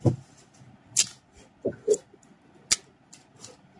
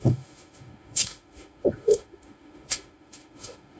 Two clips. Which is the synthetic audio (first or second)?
second